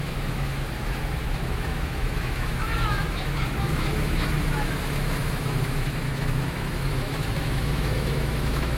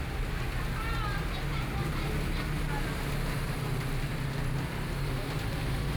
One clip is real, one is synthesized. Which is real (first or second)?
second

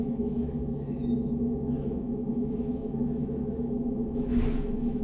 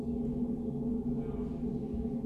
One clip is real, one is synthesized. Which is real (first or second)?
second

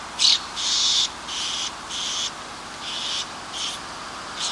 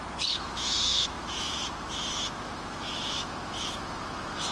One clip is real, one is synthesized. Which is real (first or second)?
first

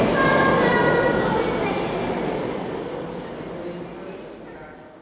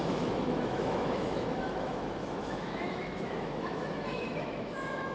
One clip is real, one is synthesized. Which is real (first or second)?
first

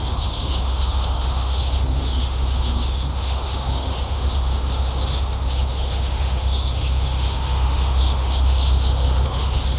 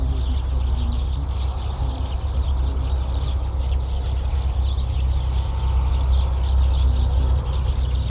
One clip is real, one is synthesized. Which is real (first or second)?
second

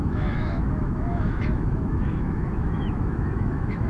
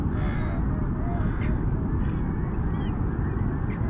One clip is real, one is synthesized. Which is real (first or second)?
second